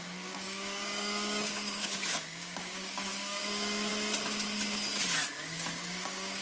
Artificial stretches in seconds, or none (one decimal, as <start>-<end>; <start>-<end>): 0.0-3.9; 5.4-6.4